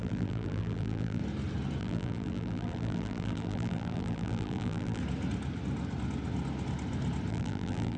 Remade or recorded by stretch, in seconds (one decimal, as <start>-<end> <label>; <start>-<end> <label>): 0.0-1.2 remade; 1.2-1.8 recorded; 1.8-5.0 remade; 5.0-7.3 recorded; 7.3-8.0 remade